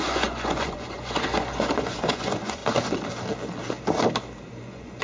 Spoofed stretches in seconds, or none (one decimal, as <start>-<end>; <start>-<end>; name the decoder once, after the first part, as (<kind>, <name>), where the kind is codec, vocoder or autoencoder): 0.0-2.6 (vocoder, Vocos); 4.6-5.0